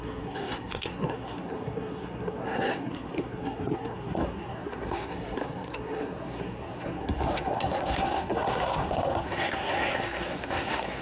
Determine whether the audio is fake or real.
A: fake